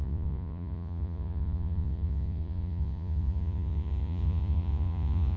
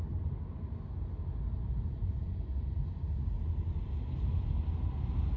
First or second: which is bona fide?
second